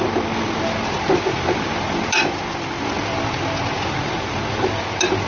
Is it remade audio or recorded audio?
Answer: recorded